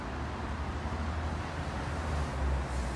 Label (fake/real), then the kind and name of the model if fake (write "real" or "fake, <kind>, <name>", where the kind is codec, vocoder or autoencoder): real